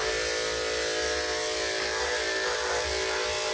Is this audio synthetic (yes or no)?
no